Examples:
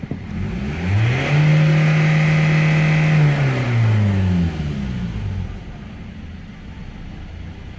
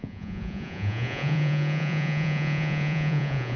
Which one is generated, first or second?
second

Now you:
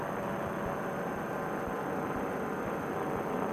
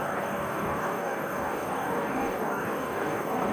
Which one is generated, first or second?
second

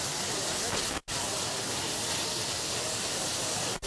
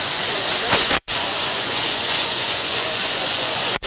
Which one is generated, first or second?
second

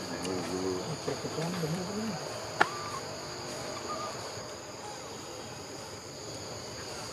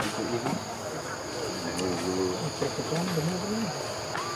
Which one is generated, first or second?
first